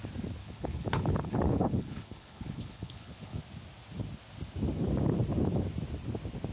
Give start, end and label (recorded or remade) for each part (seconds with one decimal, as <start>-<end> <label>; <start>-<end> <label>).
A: 0.0-0.4 recorded; 0.4-3.4 remade; 3.4-6.5 recorded